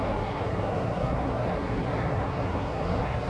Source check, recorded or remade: remade